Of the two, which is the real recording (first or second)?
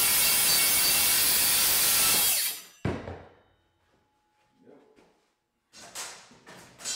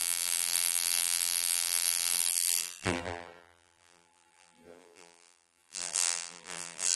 first